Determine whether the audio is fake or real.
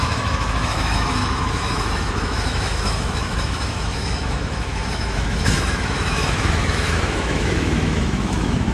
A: fake